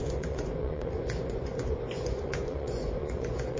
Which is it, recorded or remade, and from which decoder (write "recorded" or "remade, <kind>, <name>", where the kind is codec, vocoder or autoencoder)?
remade, vocoder, Vocos